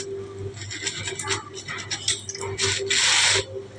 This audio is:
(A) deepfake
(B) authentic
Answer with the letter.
B